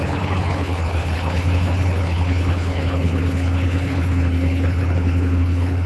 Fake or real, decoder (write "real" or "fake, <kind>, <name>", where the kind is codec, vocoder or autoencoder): fake, codec, HILCodec